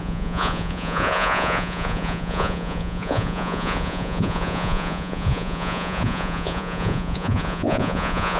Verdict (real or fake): fake